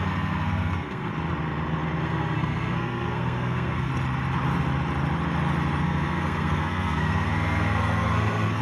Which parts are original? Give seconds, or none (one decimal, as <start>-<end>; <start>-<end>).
1.1-2.0; 3.9-5.8